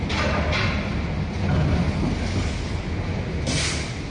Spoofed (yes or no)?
no